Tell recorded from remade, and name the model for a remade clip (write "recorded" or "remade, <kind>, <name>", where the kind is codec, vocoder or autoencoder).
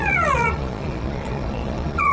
remade, vocoder, Vocos